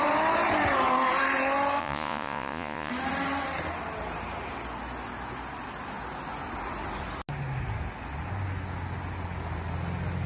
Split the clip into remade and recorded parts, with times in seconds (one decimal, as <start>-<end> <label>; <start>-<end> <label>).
0.0-1.8 recorded; 1.8-2.9 remade; 2.9-10.3 recorded